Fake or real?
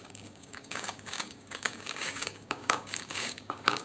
fake